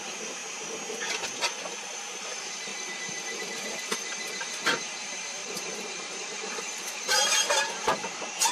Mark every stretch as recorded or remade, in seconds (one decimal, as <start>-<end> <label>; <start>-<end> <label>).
0.0-0.4 remade; 0.4-2.2 recorded; 2.2-2.7 remade; 2.7-3.4 recorded; 3.4-8.5 remade